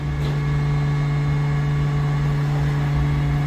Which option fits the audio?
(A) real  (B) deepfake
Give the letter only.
A